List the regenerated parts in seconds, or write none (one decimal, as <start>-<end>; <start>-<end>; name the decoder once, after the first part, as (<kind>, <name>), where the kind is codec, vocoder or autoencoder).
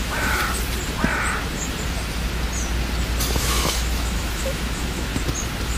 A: 0.0-0.4 (autoencoder, DAC-VAE); 3.4-5.1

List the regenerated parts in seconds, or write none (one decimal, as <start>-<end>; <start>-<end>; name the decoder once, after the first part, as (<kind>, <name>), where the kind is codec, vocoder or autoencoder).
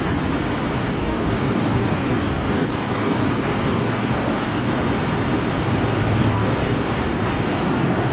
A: 0.8-4.8 (codec, DAC); 5.9-8.1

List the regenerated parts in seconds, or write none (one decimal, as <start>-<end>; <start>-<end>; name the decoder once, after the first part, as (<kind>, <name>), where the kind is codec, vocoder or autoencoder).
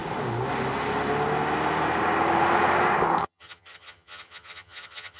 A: 3.2-5.2 (vocoder, HiFi-GAN)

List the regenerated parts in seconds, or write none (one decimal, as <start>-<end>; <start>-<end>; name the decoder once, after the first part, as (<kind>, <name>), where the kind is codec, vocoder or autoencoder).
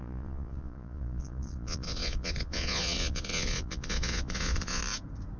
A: 0.0-4.8 (vocoder, Vocos)